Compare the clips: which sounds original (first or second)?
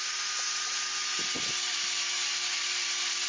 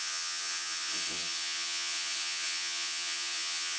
first